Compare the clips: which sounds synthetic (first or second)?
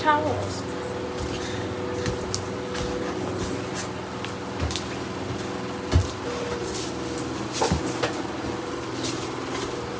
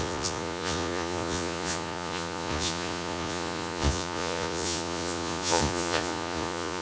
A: second